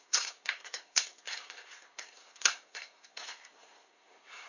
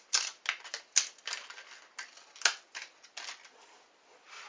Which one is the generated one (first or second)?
first